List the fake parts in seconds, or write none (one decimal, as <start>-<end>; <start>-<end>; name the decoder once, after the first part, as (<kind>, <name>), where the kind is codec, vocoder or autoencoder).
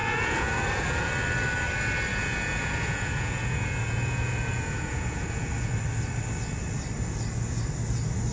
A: 0.0-1.1 (vocoder, Vocos); 2.1-5.7